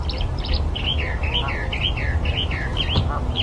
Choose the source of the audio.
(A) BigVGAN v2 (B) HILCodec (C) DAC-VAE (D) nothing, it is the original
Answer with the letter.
D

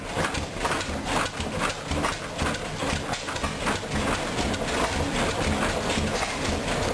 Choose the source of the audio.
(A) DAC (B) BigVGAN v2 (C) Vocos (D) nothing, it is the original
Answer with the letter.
D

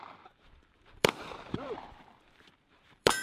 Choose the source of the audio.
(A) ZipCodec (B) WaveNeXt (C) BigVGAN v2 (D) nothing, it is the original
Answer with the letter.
C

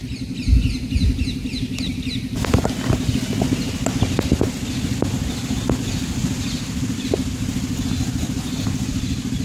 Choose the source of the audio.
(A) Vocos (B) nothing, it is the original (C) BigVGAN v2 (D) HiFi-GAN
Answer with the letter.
B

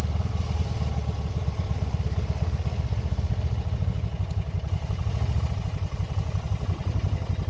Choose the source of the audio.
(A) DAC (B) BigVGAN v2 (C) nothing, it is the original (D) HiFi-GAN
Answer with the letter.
C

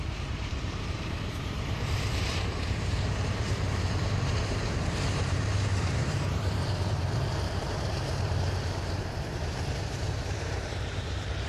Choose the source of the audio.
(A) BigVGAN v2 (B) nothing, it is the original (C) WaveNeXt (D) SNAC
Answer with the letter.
A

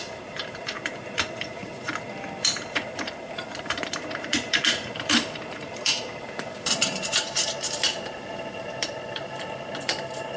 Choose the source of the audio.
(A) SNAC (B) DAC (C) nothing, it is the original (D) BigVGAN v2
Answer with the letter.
D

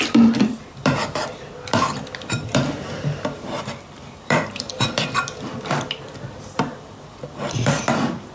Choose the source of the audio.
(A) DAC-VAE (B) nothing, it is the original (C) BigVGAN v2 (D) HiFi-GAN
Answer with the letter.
C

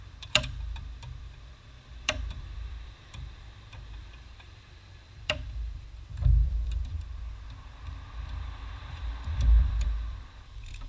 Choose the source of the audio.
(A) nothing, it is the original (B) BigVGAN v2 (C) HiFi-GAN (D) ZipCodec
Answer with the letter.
B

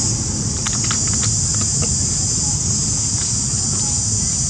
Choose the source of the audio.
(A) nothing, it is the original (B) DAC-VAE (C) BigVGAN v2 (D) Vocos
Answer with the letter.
A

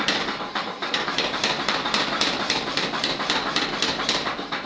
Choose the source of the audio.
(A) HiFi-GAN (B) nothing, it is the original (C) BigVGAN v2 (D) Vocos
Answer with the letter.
C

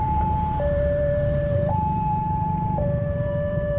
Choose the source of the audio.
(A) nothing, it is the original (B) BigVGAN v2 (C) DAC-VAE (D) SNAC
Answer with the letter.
B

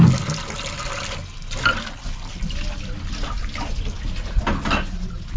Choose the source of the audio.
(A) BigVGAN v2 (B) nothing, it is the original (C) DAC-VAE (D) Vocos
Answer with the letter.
B